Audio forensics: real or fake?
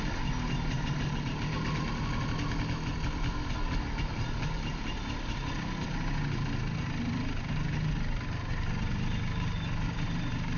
real